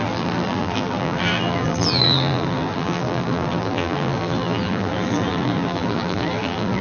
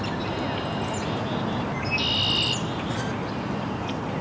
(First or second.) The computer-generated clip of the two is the first